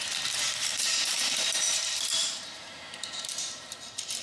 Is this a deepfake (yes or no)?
yes